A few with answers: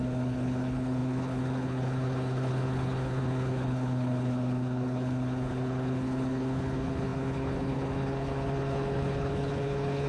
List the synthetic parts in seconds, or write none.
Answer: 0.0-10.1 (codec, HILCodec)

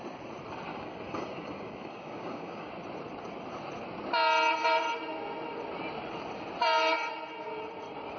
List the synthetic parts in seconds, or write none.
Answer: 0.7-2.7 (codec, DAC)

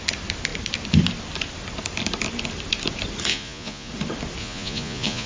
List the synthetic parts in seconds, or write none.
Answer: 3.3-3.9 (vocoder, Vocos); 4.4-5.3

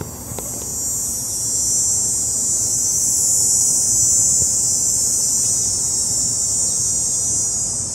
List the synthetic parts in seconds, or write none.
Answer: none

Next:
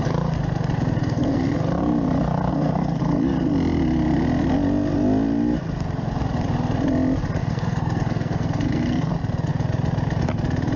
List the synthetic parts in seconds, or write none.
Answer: 1.0-1.6 (codec, SNAC); 2.5-3.0; 7.4-9.1